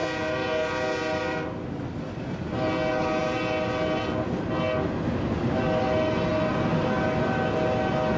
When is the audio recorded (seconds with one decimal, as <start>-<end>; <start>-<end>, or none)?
0.0-8.2